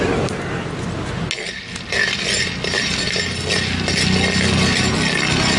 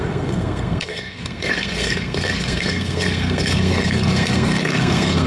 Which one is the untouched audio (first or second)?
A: first